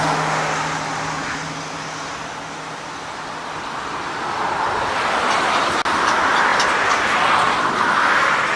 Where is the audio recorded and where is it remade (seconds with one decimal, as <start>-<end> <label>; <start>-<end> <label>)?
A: 0.0-8.6 recorded